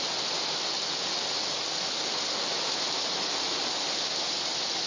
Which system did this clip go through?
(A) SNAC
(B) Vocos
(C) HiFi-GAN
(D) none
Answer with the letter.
D